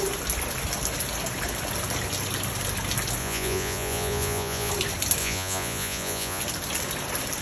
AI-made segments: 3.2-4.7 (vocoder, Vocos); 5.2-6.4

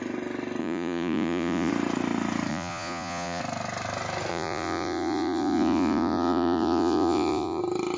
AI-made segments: 0.6-1.7 (vocoder, Vocos); 2.5-3.4; 4.3-7.6